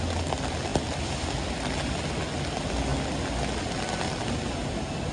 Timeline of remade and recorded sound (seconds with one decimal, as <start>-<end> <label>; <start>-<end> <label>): 0.0-5.1 recorded